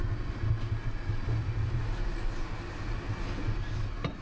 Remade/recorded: recorded